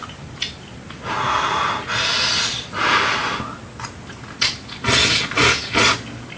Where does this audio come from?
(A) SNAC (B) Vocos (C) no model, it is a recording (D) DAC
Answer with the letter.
C